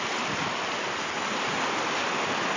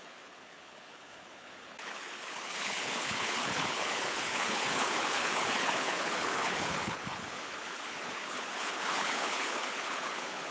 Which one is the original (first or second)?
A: first